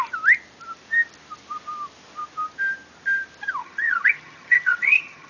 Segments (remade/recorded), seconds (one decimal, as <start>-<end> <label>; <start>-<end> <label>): 0.0-3.6 recorded; 3.6-5.3 remade